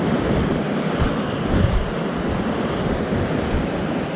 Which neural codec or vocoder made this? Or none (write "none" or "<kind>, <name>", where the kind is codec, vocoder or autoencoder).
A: none